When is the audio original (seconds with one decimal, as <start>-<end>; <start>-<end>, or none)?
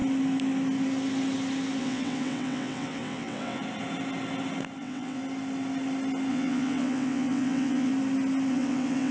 0.0-1.8; 3.6-4.8; 5.2-6.3; 7.9-8.5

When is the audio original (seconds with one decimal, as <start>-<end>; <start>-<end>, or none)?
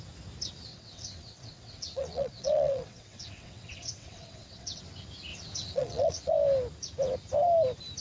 0.0-0.7; 4.8-5.3; 6.3-8.0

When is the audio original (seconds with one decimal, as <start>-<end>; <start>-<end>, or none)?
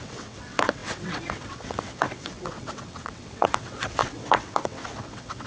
none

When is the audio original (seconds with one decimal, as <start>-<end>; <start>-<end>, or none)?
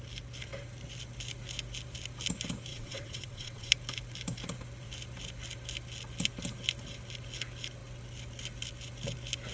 0.0-2.7; 3.7-9.5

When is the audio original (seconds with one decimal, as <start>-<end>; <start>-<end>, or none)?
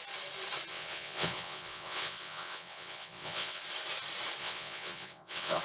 0.0-0.7; 3.6-4.4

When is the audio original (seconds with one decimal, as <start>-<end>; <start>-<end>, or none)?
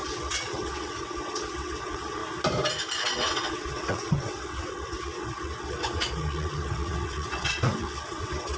2.2-3.0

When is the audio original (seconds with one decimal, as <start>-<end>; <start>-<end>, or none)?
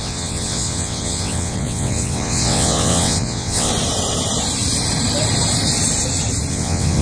3.7-6.5